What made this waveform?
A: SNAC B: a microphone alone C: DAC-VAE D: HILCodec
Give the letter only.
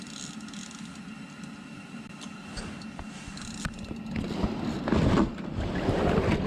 B